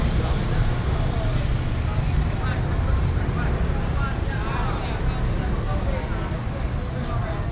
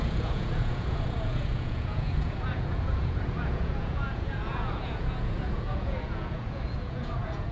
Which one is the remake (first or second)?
second